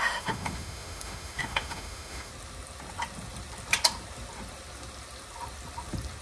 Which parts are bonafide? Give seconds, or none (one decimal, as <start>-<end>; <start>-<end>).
2.3-6.2